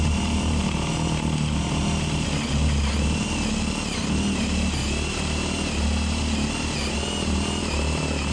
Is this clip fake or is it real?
real